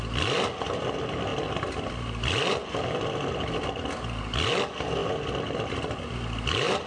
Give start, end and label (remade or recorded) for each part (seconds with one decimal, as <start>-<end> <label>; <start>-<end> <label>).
0.0-6.9 recorded